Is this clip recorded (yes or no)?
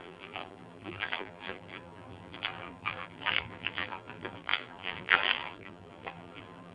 no